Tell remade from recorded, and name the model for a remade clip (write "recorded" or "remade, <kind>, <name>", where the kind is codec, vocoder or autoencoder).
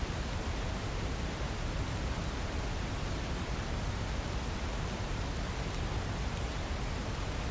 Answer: recorded